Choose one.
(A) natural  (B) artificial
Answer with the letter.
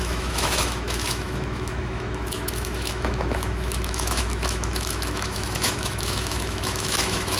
B